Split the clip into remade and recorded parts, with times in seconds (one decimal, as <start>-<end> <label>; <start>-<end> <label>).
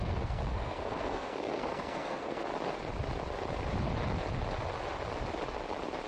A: 0.0-2.5 remade; 2.5-6.1 recorded